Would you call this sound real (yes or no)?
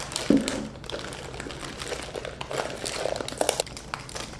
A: yes